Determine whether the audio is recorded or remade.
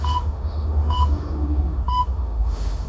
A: remade